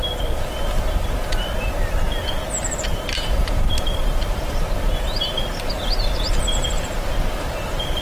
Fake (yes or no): no